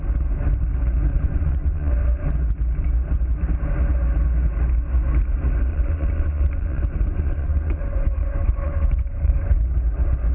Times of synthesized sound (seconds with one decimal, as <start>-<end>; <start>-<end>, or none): 1.1-1.9; 5.7-9.6